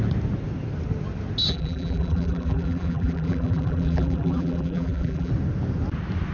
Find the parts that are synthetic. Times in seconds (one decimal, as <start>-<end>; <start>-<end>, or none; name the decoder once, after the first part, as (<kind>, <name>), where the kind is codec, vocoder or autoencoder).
1.5-5.3 (vocoder, BigVGAN v2)